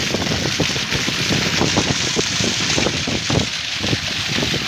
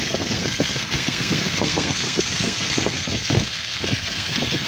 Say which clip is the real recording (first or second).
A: first